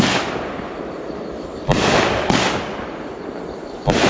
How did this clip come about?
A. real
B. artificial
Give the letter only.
A